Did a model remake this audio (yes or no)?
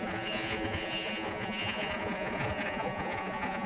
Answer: yes